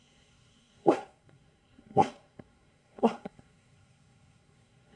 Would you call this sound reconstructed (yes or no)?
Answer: yes